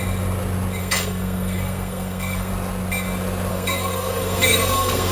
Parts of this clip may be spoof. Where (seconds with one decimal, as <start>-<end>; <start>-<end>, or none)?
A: 0.8-2.5; 3.5-5.1